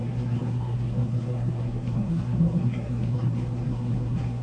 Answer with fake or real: fake